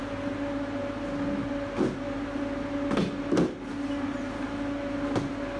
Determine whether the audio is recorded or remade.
recorded